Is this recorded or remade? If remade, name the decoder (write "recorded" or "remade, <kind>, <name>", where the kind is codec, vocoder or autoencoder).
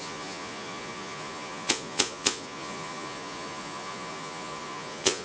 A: remade, vocoder, Vocos